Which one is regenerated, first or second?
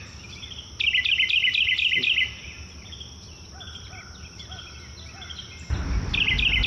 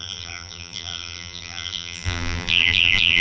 second